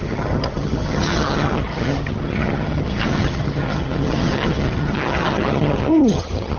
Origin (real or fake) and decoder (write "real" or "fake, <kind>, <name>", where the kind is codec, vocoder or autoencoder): fake, vocoder, HiFi-GAN